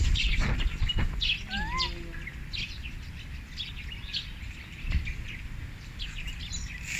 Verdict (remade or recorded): recorded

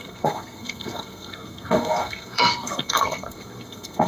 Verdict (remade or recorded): remade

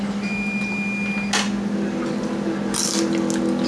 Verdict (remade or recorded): recorded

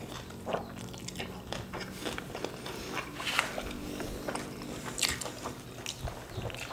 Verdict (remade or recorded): recorded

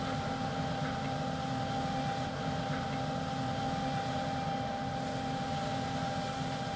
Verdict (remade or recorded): recorded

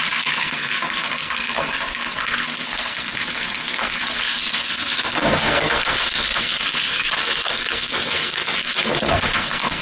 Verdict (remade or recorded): remade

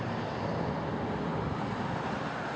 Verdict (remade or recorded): recorded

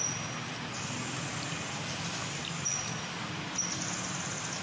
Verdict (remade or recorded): recorded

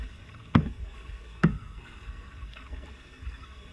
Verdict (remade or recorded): remade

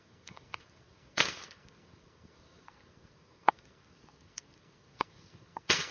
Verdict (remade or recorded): remade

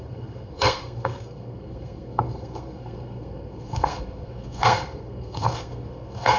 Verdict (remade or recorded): remade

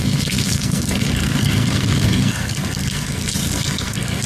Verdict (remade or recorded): remade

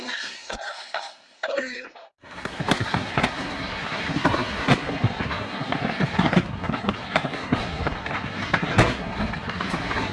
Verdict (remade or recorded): remade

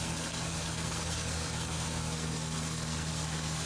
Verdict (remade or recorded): remade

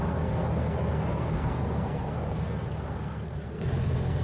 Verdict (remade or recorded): remade